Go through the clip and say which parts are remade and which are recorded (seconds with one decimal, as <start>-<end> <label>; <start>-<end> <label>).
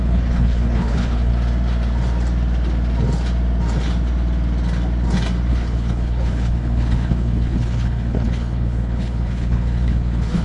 0.0-1.3 remade; 1.3-5.5 recorded; 5.5-10.4 remade